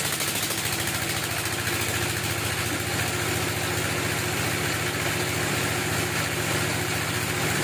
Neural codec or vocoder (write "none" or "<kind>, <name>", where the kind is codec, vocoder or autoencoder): none